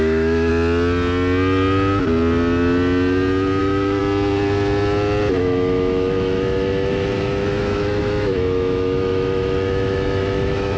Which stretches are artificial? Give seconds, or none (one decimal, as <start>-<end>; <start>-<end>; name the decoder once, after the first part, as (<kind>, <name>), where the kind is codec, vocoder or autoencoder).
0.0-0.5 (autoencoder, DAC-VAE); 3.6-4.0; 5.3-10.8